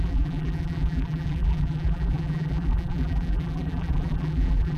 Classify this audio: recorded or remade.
remade